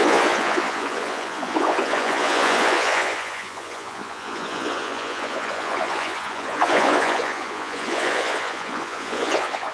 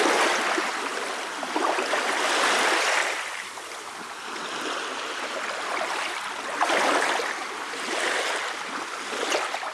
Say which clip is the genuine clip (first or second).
second